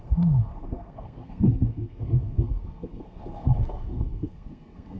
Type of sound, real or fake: fake